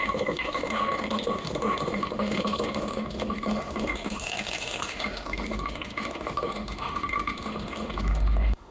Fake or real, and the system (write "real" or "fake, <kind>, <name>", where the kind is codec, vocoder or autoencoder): fake, autoencoder, DAC-VAE